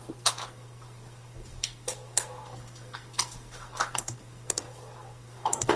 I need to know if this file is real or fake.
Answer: fake